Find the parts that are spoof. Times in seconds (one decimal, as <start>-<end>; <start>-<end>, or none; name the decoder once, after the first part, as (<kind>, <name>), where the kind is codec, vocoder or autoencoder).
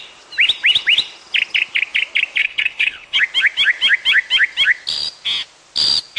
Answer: 2.4-3.2 (codec, HILCodec)